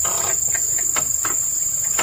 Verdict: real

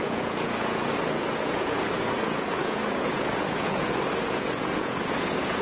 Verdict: fake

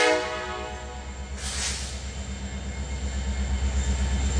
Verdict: real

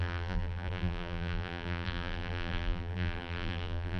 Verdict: fake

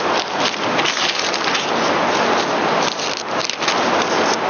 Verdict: real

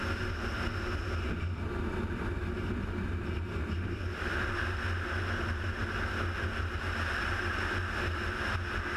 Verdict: real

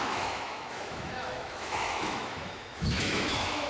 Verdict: fake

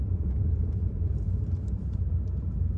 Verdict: fake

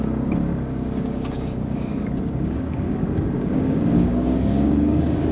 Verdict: fake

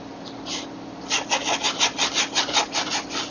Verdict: real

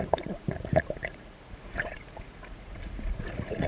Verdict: fake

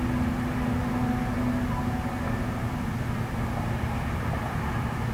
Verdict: real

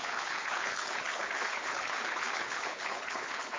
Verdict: fake